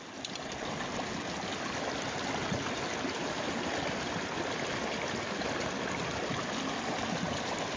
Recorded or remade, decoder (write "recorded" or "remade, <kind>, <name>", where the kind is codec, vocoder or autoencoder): recorded